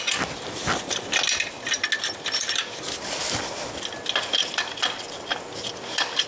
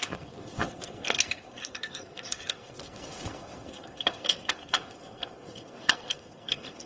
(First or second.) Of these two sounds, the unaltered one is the first